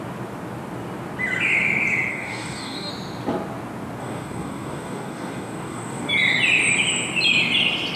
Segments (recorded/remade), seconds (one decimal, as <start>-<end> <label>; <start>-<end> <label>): 0.0-2.1 recorded; 2.1-2.9 remade; 2.9-4.0 recorded; 4.0-6.1 remade; 6.1-8.0 recorded